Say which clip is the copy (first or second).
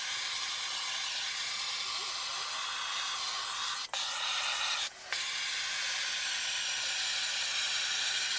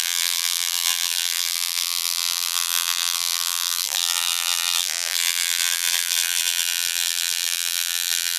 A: second